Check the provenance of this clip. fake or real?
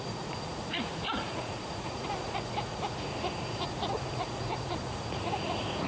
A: fake